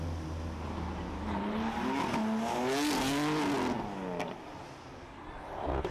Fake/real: real